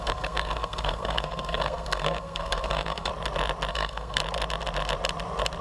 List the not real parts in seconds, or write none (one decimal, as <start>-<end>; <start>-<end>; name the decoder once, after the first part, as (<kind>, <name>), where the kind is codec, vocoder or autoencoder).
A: 0.0-3.1 (codec, SNAC); 3.7-4.2